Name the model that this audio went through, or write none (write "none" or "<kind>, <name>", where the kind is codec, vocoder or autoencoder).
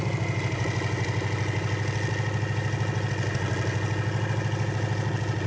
none